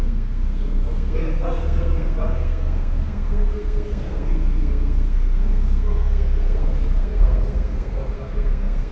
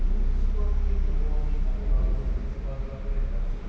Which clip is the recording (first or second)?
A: second